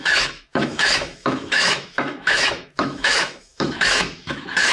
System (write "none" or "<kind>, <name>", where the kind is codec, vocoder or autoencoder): autoencoder, DAC-VAE